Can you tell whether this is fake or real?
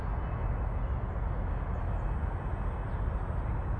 real